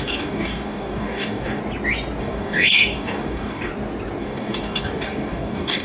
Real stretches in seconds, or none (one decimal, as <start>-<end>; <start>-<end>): 1.6-2.2; 3.7-4.2